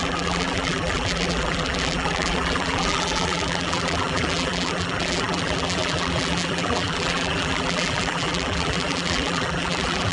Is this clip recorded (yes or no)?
no